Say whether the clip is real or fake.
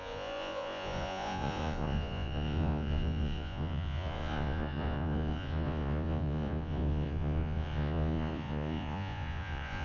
fake